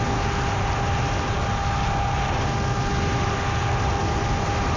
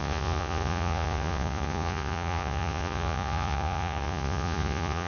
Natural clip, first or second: first